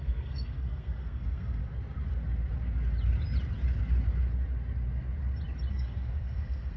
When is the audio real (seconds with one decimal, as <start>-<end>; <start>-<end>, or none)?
1.6-5.7